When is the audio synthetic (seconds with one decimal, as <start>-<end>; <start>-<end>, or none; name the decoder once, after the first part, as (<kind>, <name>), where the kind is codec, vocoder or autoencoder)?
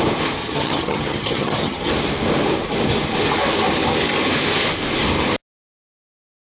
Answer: 0.4-1.8 (vocoder, HiFi-GAN)